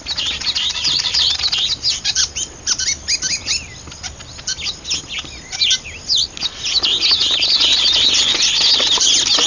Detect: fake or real real